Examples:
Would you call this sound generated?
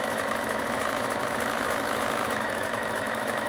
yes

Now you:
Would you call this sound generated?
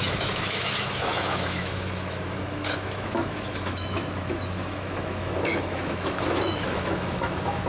yes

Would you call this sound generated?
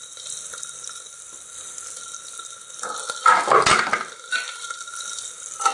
no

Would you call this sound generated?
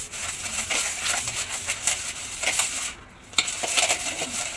no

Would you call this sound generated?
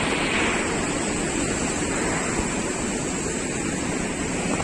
no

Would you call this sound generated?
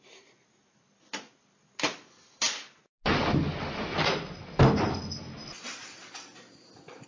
no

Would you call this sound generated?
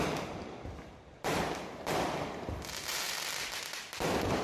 no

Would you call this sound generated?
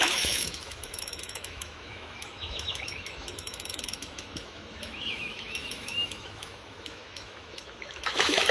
yes